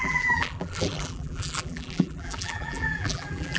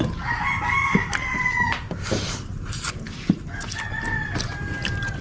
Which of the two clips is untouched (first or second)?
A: second